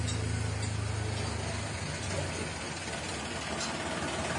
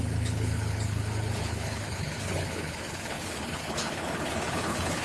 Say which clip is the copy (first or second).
second